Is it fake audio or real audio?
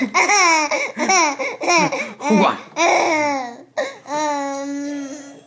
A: real